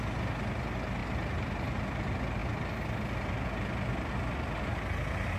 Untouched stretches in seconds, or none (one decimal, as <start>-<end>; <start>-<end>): 0.0-1.0; 1.5-5.4